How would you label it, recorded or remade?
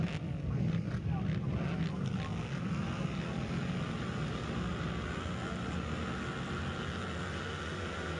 recorded